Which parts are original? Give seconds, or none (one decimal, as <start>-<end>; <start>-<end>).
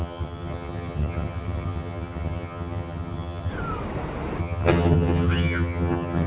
3.5-4.4